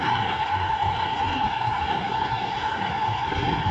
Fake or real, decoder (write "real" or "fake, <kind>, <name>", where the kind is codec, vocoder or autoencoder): fake, codec, SNAC